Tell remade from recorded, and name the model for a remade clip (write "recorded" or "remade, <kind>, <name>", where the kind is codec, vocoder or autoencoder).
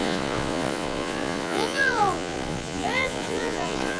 remade, vocoder, Vocos